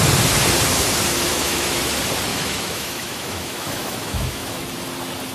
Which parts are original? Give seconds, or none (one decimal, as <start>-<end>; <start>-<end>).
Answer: 0.0-1.3; 1.8-2.3; 4.6-5.3